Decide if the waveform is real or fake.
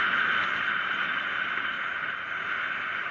real